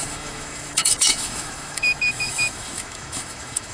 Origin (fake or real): fake